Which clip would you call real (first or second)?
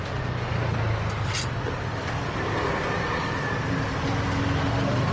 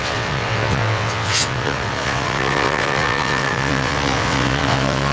first